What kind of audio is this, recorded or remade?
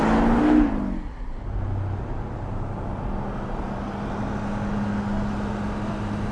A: recorded